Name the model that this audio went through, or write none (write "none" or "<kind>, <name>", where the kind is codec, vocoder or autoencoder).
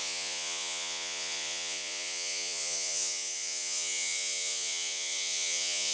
vocoder, Vocos